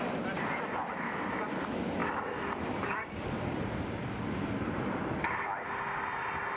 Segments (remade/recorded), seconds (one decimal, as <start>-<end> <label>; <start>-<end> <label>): 0.0-2.0 recorded; 2.0-3.6 remade; 3.6-6.6 recorded